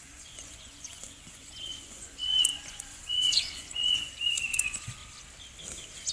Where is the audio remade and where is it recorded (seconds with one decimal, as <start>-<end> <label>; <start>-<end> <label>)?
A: 0.0-5.0 remade; 5.0-6.1 recorded